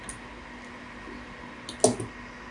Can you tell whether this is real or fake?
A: real